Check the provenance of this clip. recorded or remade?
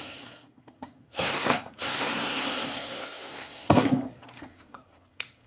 remade